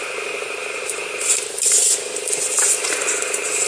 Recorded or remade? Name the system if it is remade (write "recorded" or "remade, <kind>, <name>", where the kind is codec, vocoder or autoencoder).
remade, vocoder, BigVGAN v2